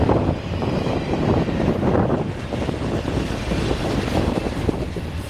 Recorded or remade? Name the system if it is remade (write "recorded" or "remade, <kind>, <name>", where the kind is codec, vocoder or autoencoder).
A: remade, vocoder, BigVGAN v2